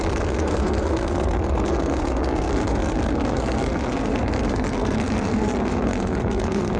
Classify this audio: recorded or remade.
remade